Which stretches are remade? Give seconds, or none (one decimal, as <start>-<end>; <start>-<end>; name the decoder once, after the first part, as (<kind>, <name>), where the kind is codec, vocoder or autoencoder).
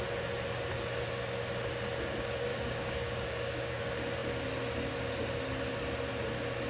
2.5-3.8 (codec, DAC)